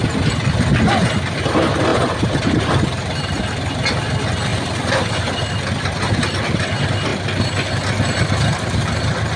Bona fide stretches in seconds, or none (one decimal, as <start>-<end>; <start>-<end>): 0.0-1.9; 3.4-4.5; 5.3-9.4